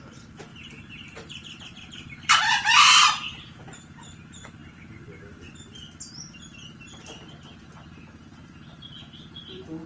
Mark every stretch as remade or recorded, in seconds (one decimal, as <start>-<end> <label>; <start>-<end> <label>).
0.0-0.5 recorded; 0.5-2.4 remade; 2.4-9.9 recorded

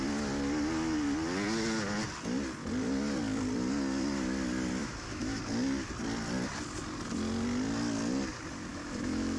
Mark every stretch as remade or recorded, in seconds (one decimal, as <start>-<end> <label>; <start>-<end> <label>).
0.0-4.8 recorded; 4.8-5.4 remade; 5.4-8.7 recorded; 8.7-9.4 remade

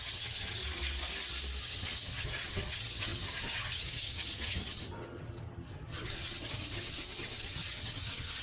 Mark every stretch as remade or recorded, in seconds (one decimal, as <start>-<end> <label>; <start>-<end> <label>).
0.0-0.6 remade; 0.6-1.6 recorded; 1.6-8.4 remade

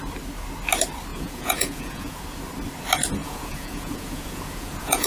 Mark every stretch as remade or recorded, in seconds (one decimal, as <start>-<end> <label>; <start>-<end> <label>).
0.0-1.1 recorded; 1.1-2.2 remade; 2.2-3.2 recorded; 3.2-5.1 remade

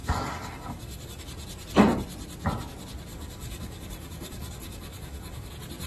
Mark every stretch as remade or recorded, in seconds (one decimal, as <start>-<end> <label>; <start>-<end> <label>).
0.0-1.2 remade; 1.2-3.1 recorded; 3.1-5.5 remade; 5.5-5.9 recorded

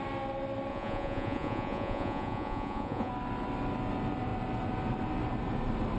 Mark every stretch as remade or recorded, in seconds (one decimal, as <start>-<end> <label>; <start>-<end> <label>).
0.0-0.7 recorded; 0.7-3.1 remade; 3.1-6.0 recorded